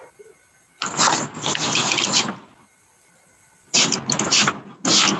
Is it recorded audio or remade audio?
recorded